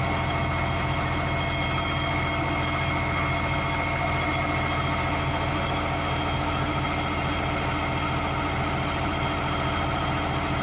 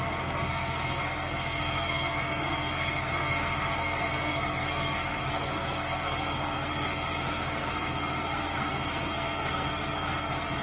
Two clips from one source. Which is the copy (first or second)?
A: second